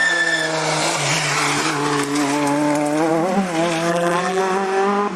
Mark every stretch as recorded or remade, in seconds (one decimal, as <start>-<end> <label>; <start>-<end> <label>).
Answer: 0.0-3.9 recorded; 3.9-4.4 remade; 4.4-5.2 recorded